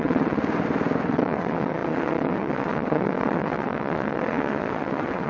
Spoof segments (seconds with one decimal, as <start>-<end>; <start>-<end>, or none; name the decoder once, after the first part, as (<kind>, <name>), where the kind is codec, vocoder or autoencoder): 0.0-0.4 (vocoder, WaveNeXt); 1.1-5.3